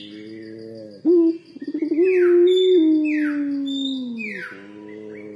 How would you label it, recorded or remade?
recorded